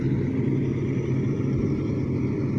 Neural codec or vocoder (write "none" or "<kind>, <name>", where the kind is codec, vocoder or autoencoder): none